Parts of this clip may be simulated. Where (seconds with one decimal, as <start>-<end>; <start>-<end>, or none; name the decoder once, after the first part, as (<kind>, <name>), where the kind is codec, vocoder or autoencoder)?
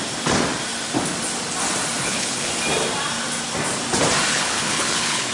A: 2.0-2.5 (codec, HILCodec); 4.3-5.3